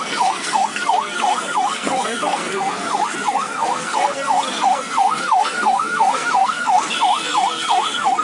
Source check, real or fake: fake